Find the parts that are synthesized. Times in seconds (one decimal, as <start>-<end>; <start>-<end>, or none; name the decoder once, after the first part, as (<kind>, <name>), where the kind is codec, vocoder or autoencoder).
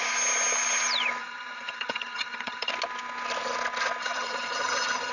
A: 1.2-2.7 (vocoder, HiFi-GAN); 4.0-5.1